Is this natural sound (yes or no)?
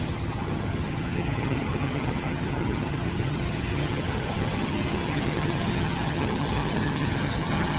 no